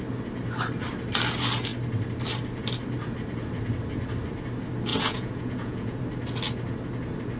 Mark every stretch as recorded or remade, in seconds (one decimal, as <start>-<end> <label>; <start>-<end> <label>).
0.0-4.9 recorded; 4.9-6.0 remade; 6.0-7.4 recorded